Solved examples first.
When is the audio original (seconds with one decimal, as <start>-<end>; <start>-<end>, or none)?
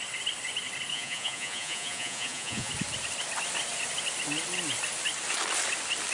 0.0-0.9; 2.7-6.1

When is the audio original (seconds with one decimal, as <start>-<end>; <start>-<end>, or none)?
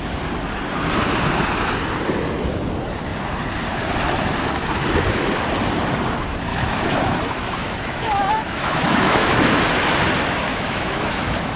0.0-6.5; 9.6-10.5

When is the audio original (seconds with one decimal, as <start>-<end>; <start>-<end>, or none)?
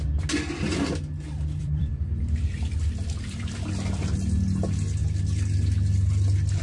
0.0-1.6; 2.9-6.6